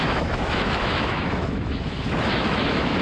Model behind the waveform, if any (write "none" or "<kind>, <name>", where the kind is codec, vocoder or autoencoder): autoencoder, DAC-VAE